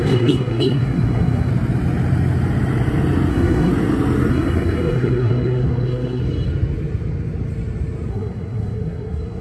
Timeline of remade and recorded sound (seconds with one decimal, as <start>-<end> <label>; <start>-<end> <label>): 0.0-1.5 remade; 1.5-3.3 recorded; 3.3-3.7 remade; 3.7-4.3 recorded; 4.3-6.2 remade; 6.2-8.1 recorded; 8.1-9.4 remade